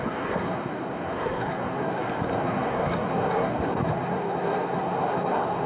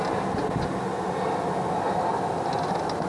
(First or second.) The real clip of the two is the second